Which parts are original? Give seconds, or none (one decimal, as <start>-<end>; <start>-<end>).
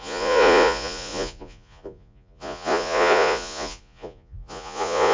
none